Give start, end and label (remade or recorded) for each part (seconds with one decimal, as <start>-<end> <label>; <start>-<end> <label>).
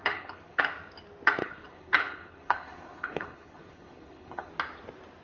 0.0-0.6 remade; 0.6-1.4 recorded; 1.4-4.5 remade; 4.5-5.2 recorded